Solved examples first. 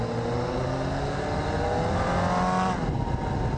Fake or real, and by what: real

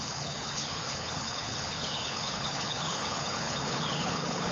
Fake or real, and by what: fake, codec, HILCodec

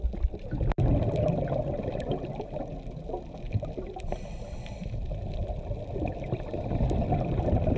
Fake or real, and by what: real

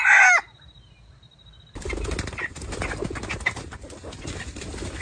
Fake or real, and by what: real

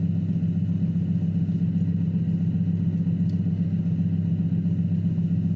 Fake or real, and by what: real